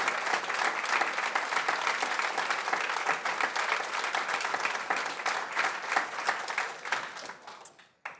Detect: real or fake real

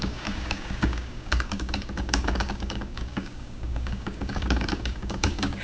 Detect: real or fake fake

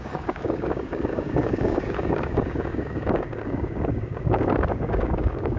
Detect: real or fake fake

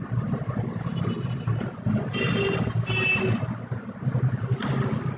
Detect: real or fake real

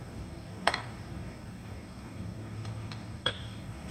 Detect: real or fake fake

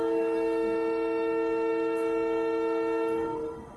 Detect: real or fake fake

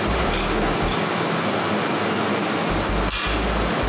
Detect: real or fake real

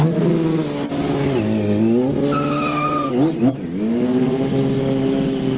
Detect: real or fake real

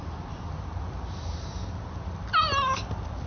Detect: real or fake real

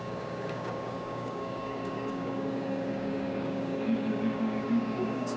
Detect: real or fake fake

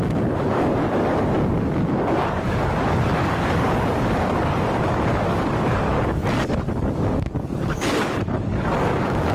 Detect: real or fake fake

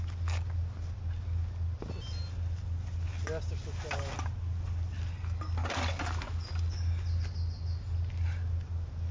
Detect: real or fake real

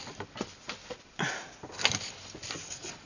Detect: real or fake real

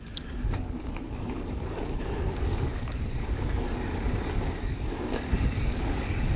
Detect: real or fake fake